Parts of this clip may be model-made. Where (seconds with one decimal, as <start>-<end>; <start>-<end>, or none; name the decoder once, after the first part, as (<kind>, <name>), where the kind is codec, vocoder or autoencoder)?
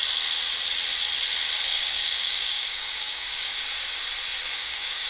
1.7-3.5 (codec, DAC); 4.4-5.1